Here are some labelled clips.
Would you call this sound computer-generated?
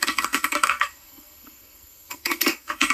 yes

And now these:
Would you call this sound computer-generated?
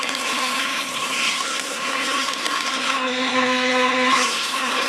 yes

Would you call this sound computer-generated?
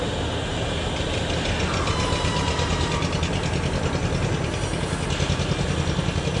no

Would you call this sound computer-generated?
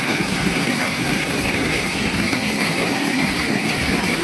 yes